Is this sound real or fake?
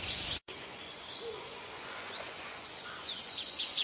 fake